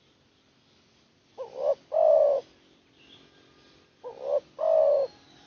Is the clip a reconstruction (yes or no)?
no